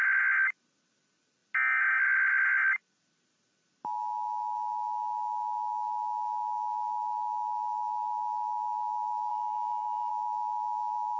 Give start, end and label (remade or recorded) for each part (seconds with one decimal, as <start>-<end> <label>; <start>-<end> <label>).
0.0-9.3 recorded; 9.3-10.1 remade; 10.1-11.2 recorded